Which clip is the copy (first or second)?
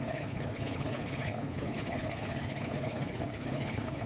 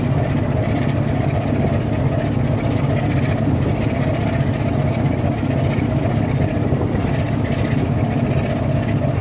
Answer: first